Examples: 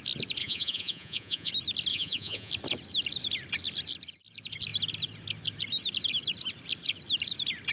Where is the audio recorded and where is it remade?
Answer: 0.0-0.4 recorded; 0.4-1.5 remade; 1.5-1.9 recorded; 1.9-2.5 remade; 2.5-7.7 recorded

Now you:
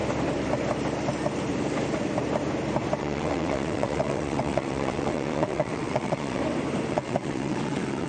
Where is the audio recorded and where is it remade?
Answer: 0.0-3.0 recorded; 3.0-6.4 remade; 6.4-6.9 recorded; 6.9-8.1 remade

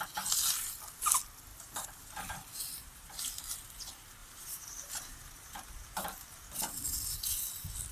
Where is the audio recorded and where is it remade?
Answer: 0.0-1.5 recorded; 1.5-2.0 remade; 2.0-2.8 recorded; 2.8-3.4 remade; 3.4-4.2 recorded; 4.2-6.6 remade; 6.6-7.9 recorded

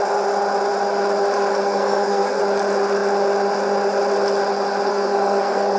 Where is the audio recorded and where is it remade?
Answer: 0.0-1.5 recorded; 1.5-2.4 remade; 2.4-4.9 recorded; 4.9-5.8 remade

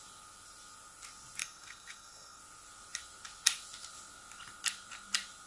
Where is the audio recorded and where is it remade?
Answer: 0.0-1.4 recorded; 1.4-2.4 remade; 2.4-5.5 recorded

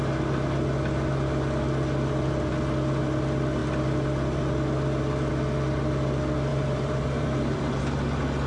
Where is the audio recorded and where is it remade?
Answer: 0.0-6.5 recorded; 6.5-7.8 remade; 7.8-8.5 recorded

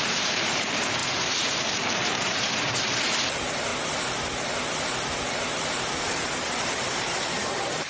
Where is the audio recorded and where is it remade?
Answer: 0.0-3.7 remade; 3.7-5.3 recorded; 5.3-7.9 remade

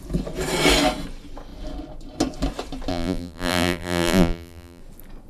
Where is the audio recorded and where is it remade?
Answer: 0.0-2.9 recorded; 2.9-4.8 remade; 4.8-5.3 recorded